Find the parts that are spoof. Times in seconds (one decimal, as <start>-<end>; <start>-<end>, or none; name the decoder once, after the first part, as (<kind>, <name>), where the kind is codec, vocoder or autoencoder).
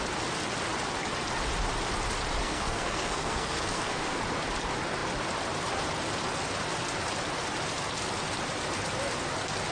2.4-4.2 (codec, SNAC)